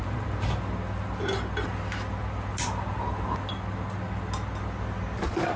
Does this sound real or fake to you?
real